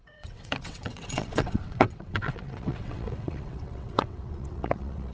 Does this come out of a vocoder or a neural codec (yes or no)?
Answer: yes